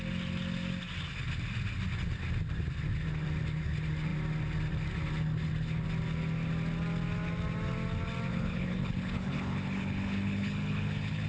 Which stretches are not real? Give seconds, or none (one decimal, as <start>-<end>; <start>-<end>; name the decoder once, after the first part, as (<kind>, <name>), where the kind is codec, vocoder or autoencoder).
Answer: 8.3-11.3 (codec, HILCodec)